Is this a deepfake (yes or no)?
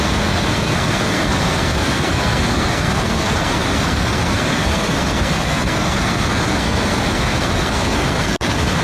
yes